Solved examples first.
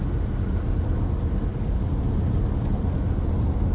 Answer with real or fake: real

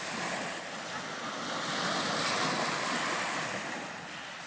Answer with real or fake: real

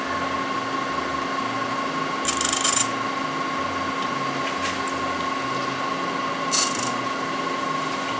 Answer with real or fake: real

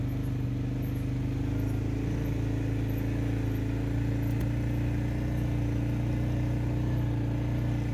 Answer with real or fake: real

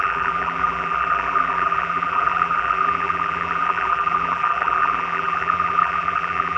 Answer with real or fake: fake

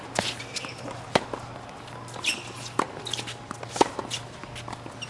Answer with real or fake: real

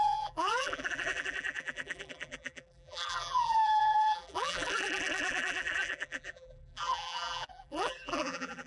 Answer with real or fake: fake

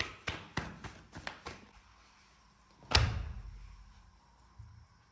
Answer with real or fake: real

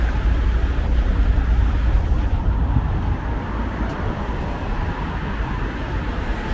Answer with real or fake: real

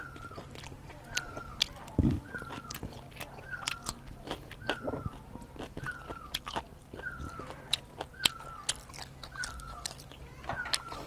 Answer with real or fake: real